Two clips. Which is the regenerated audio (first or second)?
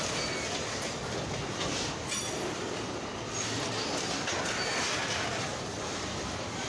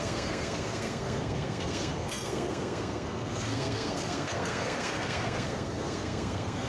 second